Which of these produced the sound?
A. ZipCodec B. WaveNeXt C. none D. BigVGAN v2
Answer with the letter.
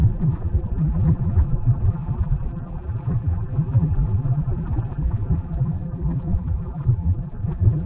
D